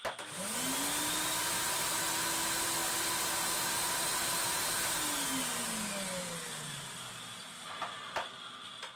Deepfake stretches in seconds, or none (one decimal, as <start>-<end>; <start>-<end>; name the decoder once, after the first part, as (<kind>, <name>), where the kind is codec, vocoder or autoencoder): 1.4-2.0 (vocoder, BigVGAN v2)